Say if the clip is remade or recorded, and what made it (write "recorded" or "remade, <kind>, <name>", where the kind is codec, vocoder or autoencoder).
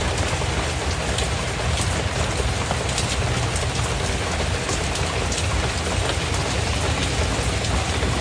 recorded